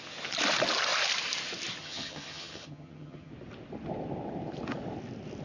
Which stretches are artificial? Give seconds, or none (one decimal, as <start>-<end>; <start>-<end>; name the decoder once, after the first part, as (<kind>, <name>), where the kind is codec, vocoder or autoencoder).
1.8-3.3 (vocoder, HiFi-GAN)